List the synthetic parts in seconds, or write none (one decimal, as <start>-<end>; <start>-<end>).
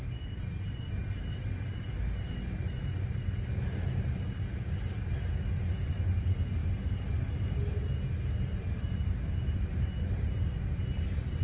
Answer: none